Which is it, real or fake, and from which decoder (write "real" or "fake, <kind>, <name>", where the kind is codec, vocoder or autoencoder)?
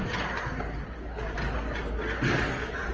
real